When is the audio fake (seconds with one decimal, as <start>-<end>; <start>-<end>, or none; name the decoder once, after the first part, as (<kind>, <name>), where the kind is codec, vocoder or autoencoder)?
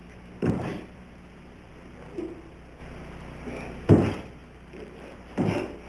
0.0-1.0 (vocoder, BigVGAN v2)